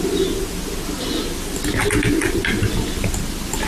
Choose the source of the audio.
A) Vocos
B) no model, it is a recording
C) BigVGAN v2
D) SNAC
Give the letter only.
B